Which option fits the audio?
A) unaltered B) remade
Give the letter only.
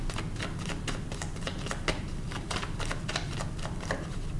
A